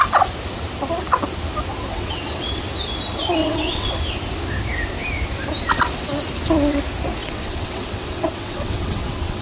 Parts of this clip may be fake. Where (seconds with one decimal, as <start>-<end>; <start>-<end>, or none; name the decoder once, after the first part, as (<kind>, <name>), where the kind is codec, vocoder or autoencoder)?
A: 1.9-2.7 (vocoder, WaveNeXt); 3.4-4.0; 7.2-9.4